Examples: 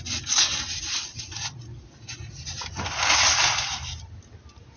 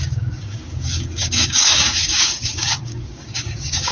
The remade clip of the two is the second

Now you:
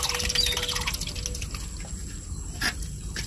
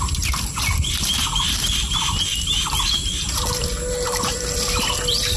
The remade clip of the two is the second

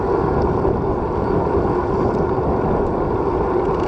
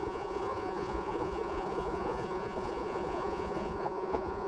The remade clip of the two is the second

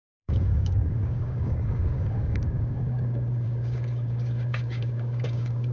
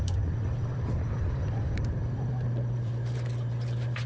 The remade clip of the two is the first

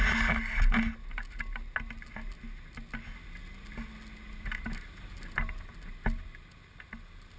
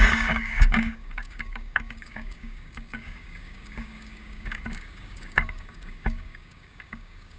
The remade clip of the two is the second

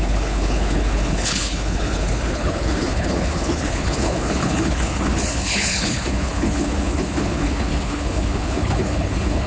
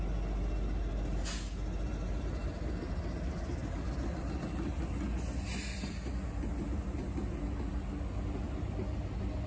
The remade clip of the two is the first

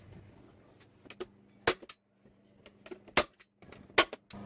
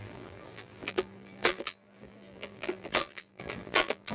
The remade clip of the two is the second